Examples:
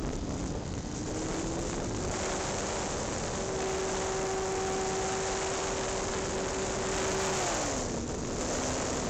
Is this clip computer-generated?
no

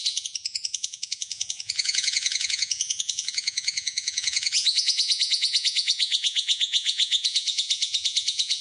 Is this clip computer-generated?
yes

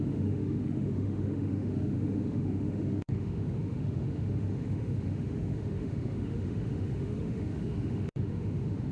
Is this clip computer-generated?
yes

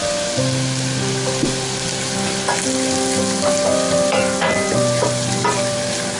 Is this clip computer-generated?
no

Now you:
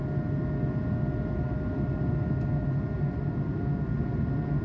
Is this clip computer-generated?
no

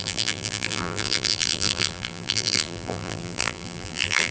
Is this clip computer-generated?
yes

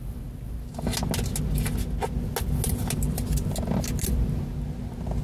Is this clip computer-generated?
no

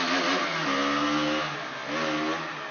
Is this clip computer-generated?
no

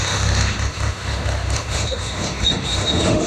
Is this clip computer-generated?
yes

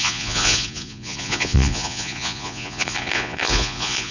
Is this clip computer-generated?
yes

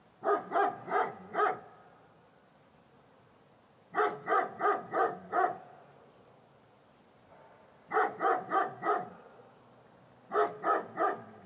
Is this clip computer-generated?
no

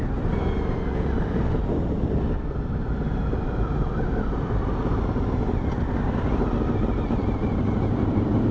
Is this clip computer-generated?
no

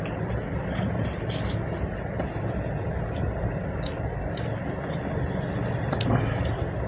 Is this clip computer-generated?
no